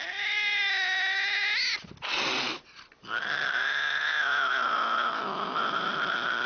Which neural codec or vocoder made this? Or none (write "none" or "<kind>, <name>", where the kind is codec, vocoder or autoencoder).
none